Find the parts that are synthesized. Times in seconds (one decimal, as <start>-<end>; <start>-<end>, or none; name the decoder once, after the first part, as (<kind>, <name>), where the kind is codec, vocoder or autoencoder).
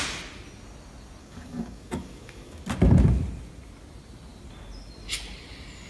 1.2-2.6 (codec, DAC)